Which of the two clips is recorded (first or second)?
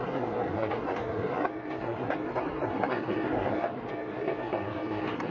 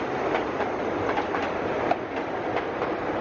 second